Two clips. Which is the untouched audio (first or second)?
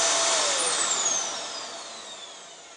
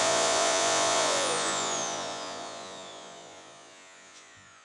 first